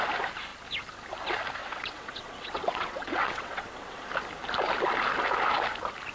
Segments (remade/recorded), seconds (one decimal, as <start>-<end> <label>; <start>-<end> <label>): 0.0-1.6 recorded; 1.6-4.0 remade; 4.0-6.1 recorded